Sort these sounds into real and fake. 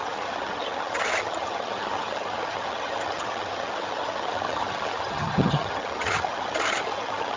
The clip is fake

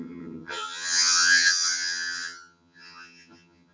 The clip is fake